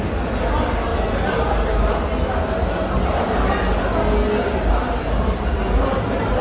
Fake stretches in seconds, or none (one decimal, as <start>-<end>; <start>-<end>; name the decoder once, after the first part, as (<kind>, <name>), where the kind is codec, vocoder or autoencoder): none